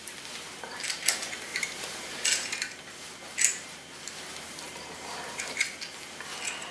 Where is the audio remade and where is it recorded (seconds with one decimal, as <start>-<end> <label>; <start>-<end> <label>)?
0.0-1.5 recorded; 1.5-2.1 remade; 2.1-4.3 recorded; 4.3-5.6 remade; 5.6-6.7 recorded